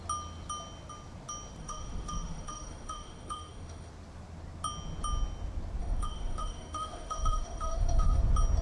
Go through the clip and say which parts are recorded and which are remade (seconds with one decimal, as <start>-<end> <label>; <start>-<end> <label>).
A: 0.0-1.6 recorded; 1.6-3.9 remade; 3.9-5.8 recorded; 5.8-8.2 remade; 8.2-8.6 recorded